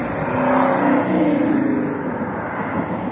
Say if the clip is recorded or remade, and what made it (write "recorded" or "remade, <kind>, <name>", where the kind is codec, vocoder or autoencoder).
recorded